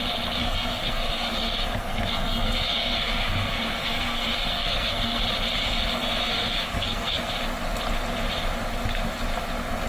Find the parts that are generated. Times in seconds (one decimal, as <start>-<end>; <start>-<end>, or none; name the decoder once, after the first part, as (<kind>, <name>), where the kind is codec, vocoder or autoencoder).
0.4-5.2 (codec, SNAC); 5.9-7.3